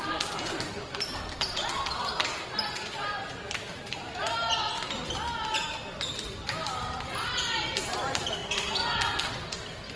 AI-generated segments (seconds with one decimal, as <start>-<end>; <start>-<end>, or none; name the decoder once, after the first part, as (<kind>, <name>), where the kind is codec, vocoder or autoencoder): none